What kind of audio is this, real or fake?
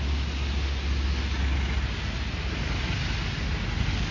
real